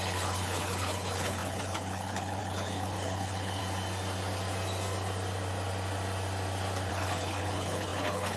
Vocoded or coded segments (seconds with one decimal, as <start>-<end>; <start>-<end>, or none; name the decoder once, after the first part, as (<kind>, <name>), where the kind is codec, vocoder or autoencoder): 0.0-3.6 (codec, HILCodec); 6.9-8.4